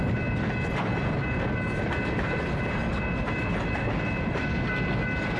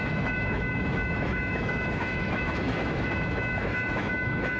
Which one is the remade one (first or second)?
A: second